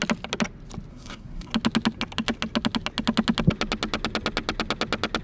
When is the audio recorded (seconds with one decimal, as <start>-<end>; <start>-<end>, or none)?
0.0-0.9; 1.5-5.2